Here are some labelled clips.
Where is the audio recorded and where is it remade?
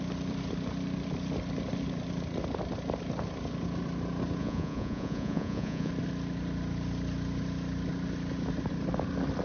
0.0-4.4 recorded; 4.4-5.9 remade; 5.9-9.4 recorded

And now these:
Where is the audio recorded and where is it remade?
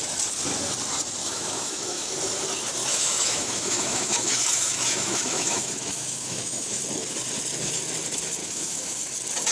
0.0-1.2 recorded; 1.2-2.1 remade; 2.1-2.8 recorded; 2.8-6.8 remade; 6.8-8.4 recorded; 8.4-9.0 remade; 9.0-9.5 recorded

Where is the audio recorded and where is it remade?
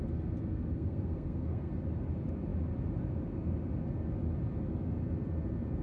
0.0-0.5 recorded; 0.5-1.7 remade; 1.7-5.8 recorded